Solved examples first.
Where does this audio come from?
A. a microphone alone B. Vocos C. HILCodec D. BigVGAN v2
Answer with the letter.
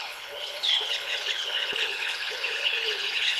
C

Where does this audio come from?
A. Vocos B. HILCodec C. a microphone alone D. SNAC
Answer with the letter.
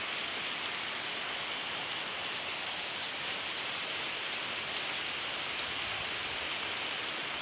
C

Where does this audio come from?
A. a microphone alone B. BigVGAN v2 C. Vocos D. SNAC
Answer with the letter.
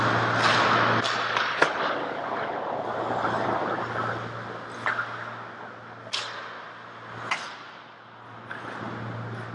A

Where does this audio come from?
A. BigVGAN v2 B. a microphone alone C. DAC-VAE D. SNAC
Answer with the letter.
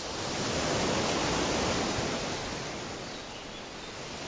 B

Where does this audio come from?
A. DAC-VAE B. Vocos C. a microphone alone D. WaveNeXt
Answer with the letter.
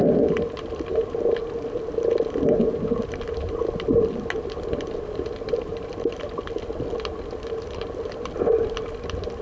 C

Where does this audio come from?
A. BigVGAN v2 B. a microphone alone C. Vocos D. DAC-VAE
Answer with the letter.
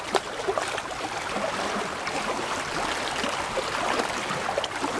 A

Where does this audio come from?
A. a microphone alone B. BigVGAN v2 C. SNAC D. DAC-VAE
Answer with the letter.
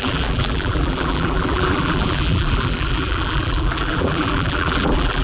B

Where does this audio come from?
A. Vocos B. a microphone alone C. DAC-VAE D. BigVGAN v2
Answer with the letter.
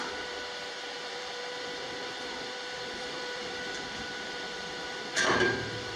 D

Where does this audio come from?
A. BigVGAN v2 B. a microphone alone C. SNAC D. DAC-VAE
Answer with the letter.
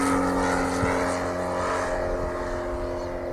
B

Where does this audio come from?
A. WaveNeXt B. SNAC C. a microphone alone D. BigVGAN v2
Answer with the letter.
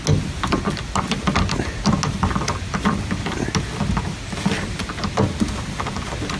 C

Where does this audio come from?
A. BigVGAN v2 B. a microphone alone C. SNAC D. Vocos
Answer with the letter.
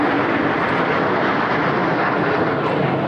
B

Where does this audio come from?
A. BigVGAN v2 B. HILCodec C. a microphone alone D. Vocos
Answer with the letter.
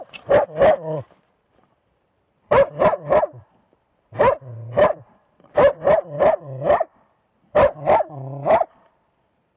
A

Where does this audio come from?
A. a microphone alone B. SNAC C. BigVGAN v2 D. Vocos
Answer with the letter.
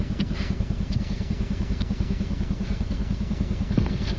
B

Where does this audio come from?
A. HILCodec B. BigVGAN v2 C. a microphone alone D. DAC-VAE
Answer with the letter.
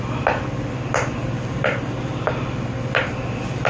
B